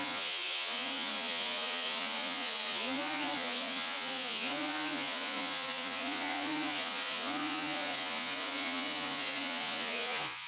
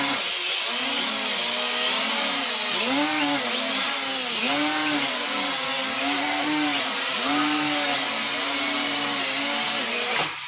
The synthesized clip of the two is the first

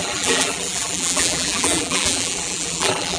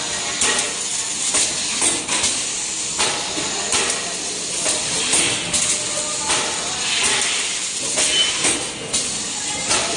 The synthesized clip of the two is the first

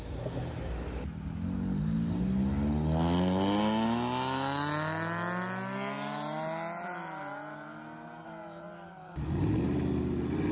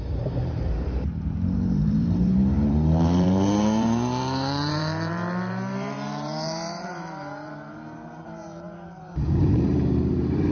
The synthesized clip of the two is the second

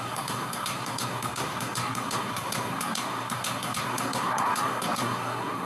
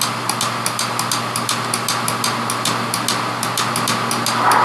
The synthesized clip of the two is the first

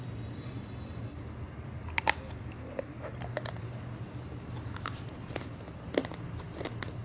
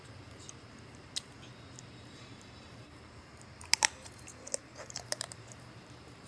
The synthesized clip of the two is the second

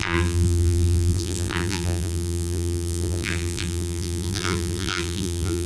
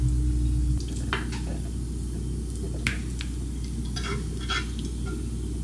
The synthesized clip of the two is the first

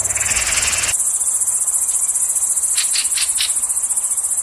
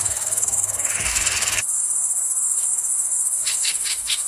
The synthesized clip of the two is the second